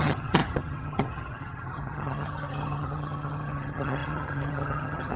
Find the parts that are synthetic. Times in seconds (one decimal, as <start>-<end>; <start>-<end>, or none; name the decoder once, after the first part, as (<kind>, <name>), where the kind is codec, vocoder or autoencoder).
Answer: 0.0-5.2 (vocoder, HiFi-GAN)